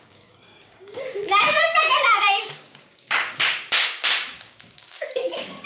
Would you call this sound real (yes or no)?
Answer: no